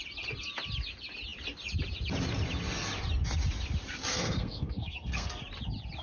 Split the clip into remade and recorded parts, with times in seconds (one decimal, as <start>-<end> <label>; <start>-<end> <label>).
0.0-4.1 recorded; 4.1-5.4 remade; 5.4-6.0 recorded